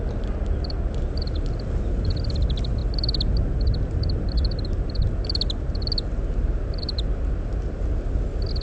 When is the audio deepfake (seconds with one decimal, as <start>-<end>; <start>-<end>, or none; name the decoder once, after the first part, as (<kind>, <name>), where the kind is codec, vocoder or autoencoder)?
none